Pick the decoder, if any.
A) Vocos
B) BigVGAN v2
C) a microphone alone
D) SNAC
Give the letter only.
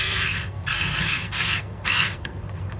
D